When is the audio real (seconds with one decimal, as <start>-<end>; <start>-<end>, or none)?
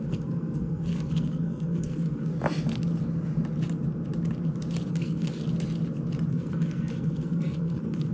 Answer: 2.3-4.9; 5.4-6.3